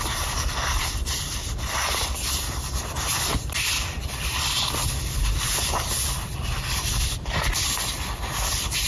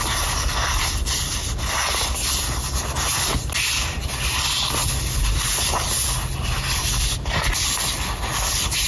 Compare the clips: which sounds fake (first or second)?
first